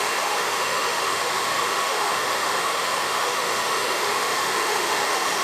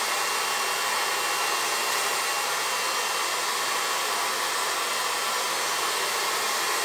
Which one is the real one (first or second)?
second